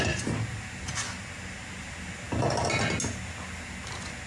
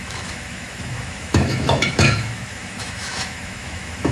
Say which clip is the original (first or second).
first